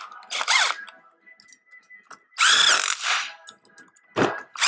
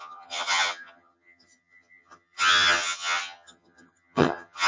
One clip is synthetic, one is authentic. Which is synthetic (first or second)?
second